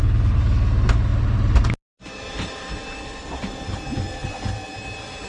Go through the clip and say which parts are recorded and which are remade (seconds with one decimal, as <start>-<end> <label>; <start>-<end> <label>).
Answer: 0.0-5.3 recorded